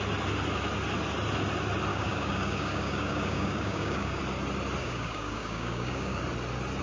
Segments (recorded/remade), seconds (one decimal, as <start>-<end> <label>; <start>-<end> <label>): 0.0-1.9 recorded; 1.9-4.2 remade; 4.2-4.8 recorded; 4.8-6.2 remade; 6.2-6.8 recorded